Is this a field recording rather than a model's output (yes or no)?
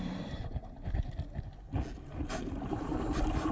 yes